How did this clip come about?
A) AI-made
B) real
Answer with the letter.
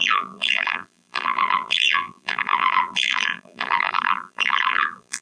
A